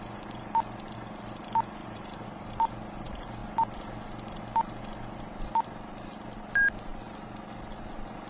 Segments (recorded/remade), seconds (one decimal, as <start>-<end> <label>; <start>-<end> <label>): 0.0-1.8 recorded; 1.8-2.7 remade; 2.7-8.3 recorded